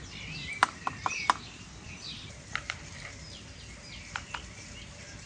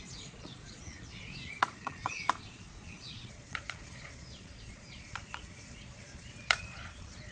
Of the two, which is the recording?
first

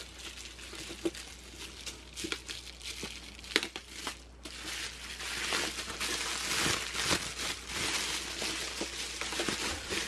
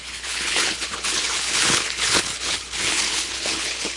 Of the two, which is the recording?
first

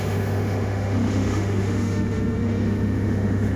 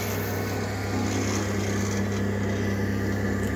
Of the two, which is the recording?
second